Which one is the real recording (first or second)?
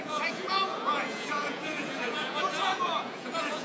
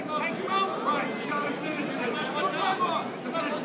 second